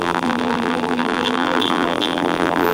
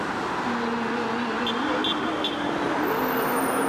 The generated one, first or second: first